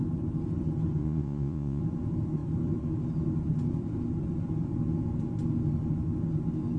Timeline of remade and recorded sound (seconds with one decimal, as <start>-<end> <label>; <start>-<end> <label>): 0.0-1.0 recorded; 1.0-1.8 remade; 1.8-6.8 recorded